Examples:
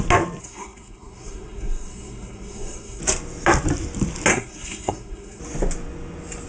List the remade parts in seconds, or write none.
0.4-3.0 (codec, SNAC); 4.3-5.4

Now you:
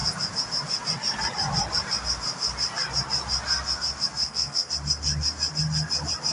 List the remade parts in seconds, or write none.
4.2-4.7 (codec, SNAC)